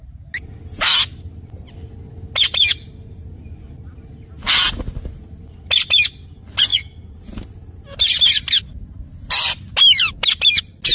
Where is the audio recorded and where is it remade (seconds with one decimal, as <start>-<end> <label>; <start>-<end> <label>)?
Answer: 0.0-10.9 recorded

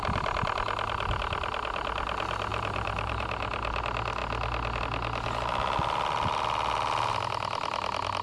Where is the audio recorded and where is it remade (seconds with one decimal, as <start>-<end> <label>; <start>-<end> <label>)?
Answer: 0.0-2.5 recorded; 2.5-3.8 remade; 3.8-8.2 recorded

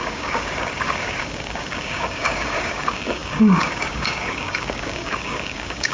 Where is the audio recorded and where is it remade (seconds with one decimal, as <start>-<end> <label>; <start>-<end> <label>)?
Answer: 0.0-5.9 remade